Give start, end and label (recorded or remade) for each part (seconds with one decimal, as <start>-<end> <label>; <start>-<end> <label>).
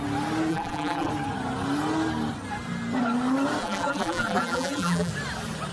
0.0-0.5 recorded; 0.5-1.1 remade; 1.1-3.6 recorded; 3.6-5.1 remade; 5.1-5.7 recorded